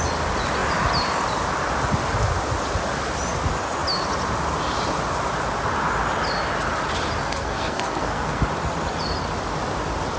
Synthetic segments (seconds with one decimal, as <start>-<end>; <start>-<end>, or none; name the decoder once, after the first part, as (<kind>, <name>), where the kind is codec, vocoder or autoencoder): 7.2-8.4 (codec, SNAC)